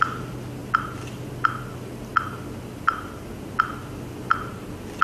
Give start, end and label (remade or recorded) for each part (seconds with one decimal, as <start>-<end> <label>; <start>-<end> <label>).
0.0-5.0 recorded